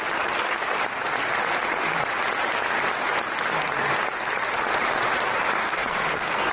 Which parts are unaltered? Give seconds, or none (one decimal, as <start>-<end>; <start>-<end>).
0.0-5.6